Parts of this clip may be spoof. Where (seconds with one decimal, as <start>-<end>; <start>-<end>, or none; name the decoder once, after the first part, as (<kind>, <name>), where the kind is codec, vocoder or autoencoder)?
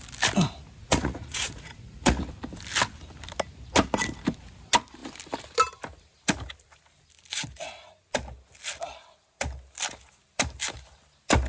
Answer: 0.8-2.3 (vocoder, Vocos)